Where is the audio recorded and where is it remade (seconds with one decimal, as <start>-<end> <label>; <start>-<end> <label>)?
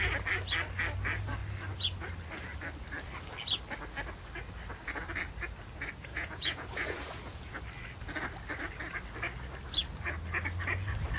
0.0-6.1 recorded; 6.1-7.6 remade; 7.6-11.2 recorded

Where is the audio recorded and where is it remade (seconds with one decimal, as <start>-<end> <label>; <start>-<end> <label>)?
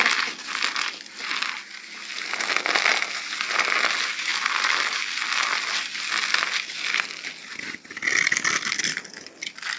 0.0-9.8 recorded